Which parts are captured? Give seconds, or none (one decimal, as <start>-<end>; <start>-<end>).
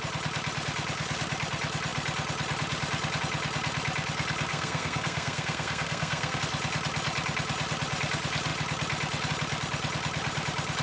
0.0-4.5; 6.4-10.8